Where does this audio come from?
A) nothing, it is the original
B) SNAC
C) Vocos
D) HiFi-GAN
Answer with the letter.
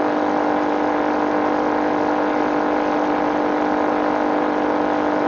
A